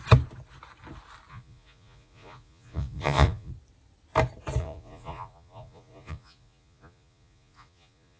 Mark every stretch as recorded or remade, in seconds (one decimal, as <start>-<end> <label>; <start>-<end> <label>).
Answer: 0.0-1.3 recorded; 1.3-3.5 remade; 3.5-4.6 recorded; 4.6-8.2 remade